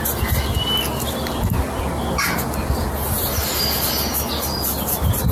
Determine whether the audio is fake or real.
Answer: real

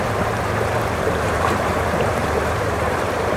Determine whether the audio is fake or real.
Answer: fake